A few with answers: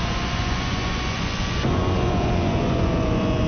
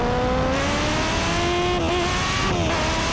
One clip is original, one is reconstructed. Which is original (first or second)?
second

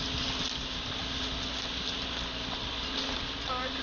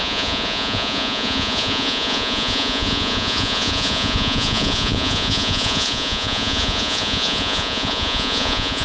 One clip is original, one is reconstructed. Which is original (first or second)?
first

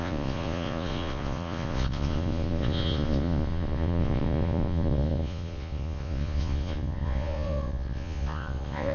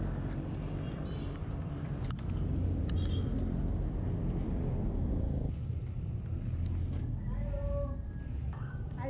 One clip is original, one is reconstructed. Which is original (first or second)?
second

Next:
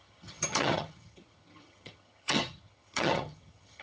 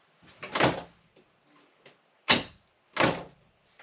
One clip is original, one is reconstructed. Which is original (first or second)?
second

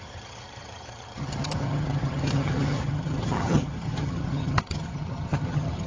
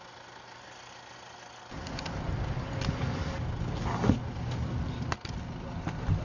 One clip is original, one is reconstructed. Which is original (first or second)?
second